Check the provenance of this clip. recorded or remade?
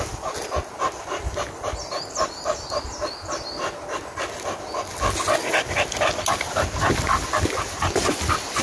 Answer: recorded